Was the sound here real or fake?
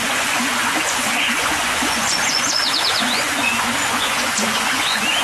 fake